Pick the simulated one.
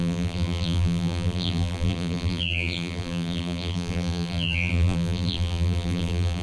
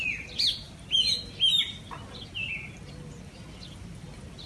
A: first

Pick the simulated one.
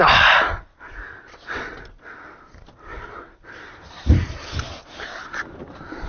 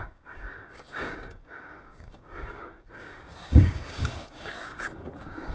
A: second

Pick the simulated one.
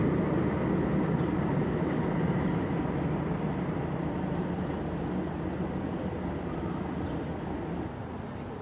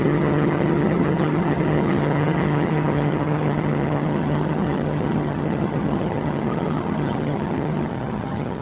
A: second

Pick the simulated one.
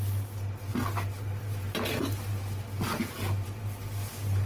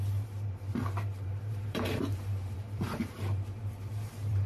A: second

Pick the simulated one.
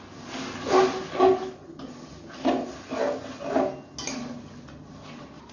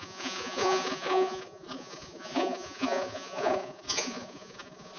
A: second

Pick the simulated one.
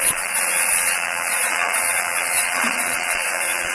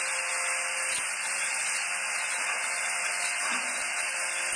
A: first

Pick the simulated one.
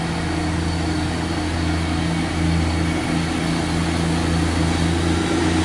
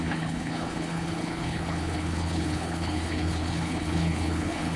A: second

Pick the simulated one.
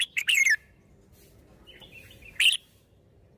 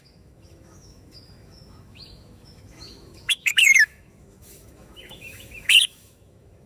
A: second